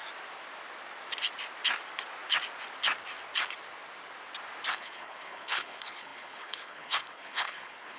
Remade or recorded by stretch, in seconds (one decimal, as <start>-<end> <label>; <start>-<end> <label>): 0.0-4.7 recorded; 4.7-8.0 remade